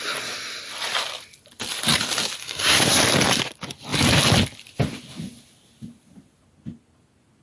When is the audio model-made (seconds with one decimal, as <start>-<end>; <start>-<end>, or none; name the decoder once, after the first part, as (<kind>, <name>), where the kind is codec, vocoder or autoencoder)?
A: 2.4-3.0 (codec, SNAC)